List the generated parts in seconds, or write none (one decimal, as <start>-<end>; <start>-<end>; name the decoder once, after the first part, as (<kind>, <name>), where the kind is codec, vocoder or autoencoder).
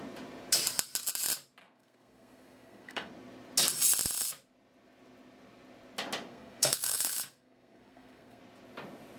1.6-3.1 (codec, SNAC); 6.3-8.4